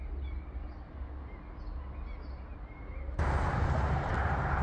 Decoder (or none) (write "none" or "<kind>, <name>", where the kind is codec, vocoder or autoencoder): none